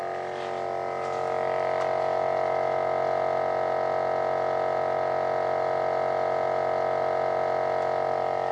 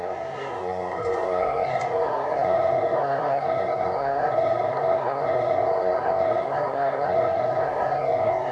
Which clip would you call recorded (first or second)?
first